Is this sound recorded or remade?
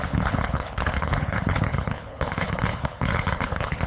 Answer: remade